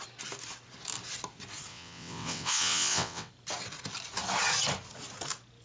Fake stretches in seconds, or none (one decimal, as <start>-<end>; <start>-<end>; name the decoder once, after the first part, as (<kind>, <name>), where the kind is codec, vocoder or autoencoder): 1.7-3.3 (vocoder, WaveNeXt)

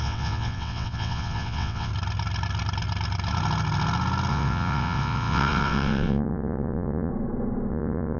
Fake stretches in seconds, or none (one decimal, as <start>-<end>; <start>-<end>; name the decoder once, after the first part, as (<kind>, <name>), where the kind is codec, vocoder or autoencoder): 0.0-1.9 (vocoder, WaveNeXt); 4.3-7.1; 7.7-8.2

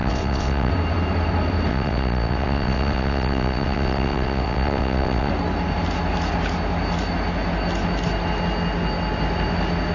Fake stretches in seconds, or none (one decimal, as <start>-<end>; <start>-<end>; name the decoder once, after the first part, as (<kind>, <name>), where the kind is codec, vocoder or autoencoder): 0.0-0.7 (vocoder, WaveNeXt); 1.7-5.3

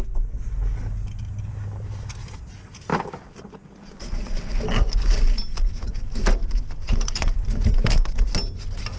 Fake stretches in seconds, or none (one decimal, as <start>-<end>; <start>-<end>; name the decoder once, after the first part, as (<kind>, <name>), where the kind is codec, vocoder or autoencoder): none